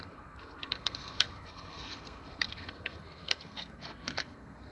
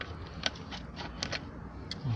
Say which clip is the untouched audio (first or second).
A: second